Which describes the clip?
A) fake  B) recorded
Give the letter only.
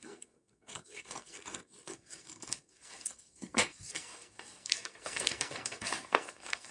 A